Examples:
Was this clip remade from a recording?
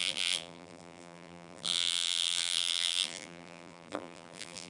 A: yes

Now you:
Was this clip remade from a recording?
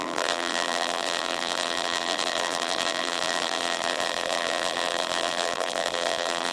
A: yes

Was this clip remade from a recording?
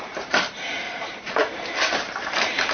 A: yes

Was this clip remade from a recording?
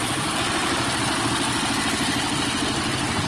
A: no